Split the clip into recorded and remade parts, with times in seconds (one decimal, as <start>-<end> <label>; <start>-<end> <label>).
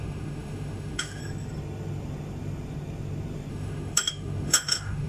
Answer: 0.0-1.2 remade; 1.2-3.5 recorded; 3.5-5.1 remade